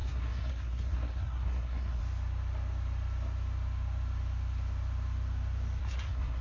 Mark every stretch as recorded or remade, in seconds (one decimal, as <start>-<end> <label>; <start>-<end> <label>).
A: 0.0-2.0 remade; 2.0-5.8 recorded; 5.8-6.4 remade